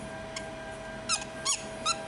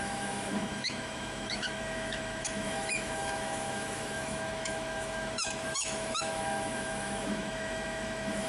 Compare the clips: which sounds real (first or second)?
first